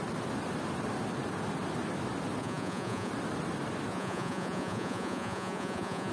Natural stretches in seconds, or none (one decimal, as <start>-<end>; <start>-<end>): 0.0-2.4; 3.1-3.9